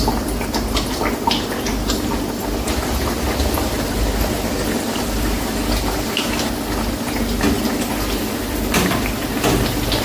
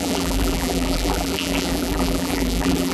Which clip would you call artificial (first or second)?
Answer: second